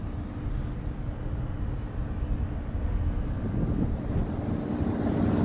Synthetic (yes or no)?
no